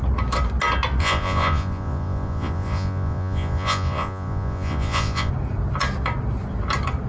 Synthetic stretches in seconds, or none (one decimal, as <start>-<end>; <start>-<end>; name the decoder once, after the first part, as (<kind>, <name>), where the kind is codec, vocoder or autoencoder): 1.0-5.3 (vocoder, Vocos)